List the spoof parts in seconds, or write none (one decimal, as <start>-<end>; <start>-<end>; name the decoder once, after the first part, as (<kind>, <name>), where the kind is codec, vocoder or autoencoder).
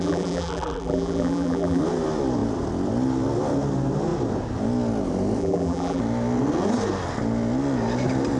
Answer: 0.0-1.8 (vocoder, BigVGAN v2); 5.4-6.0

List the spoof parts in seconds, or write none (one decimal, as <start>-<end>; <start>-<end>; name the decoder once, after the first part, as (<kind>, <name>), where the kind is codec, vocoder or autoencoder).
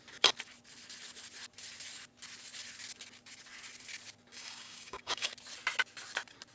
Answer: 4.3-5.3 (codec, DAC)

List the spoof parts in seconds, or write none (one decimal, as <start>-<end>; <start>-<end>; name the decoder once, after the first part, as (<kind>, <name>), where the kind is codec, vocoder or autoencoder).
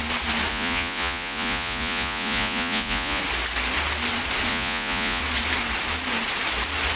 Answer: 0.5-3.2 (vocoder, Vocos); 4.5-5.2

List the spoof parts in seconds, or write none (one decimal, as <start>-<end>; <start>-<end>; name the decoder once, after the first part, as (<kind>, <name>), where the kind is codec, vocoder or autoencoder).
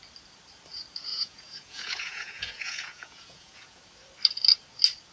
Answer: 1.1-3.8 (vocoder, Vocos)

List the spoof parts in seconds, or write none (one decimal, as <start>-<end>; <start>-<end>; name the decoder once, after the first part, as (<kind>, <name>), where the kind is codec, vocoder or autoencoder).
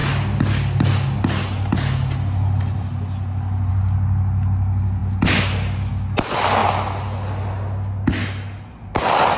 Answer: none